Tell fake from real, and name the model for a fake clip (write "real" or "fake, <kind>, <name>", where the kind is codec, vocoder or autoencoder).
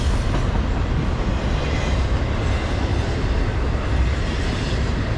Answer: fake, vocoder, BigVGAN v2